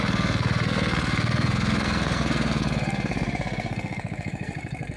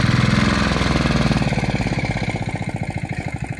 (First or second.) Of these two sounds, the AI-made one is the first